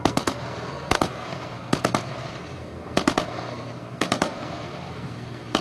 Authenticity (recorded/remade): remade